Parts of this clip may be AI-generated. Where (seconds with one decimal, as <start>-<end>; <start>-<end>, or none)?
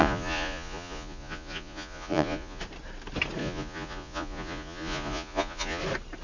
0.0-2.6; 3.4-5.8